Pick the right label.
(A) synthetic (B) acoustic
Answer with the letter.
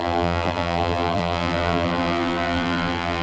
A